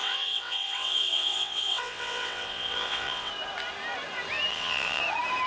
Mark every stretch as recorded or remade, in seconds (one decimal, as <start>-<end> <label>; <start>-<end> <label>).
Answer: 0.0-3.3 remade; 3.3-4.5 recorded; 4.5-5.0 remade; 5.0-5.5 recorded